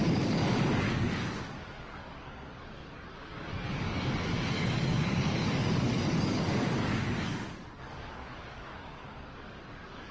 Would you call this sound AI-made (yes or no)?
yes